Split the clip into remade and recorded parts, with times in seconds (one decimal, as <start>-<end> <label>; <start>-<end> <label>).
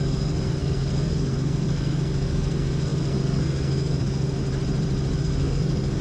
0.0-4.4 remade; 4.4-5.2 recorded; 5.2-6.0 remade